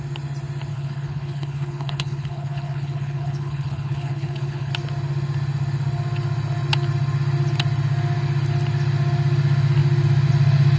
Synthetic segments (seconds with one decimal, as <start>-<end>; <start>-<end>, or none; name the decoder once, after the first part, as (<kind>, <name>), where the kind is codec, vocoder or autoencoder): 0.7-4.7 (codec, HILCodec)